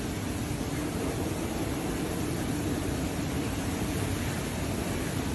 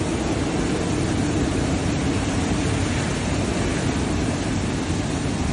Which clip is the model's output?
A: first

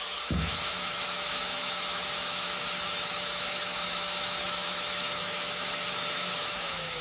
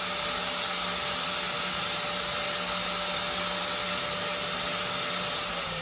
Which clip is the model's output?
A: first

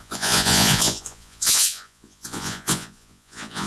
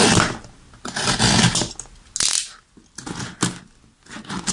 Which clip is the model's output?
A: first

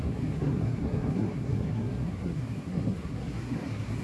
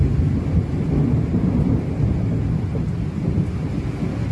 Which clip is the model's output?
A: first